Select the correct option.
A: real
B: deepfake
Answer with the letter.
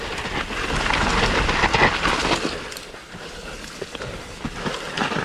A